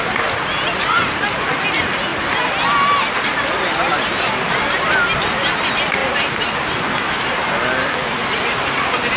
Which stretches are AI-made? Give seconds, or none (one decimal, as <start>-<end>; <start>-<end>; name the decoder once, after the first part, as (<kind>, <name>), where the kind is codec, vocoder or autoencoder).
0.0-2.1 (vocoder, BigVGAN v2); 5.2-6.0; 7.5-9.2